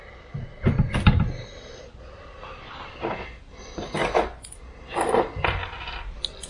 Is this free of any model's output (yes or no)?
yes